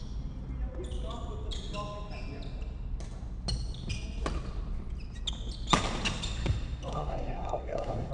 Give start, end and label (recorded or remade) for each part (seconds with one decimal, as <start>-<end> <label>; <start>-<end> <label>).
0.0-6.9 recorded; 6.9-8.1 remade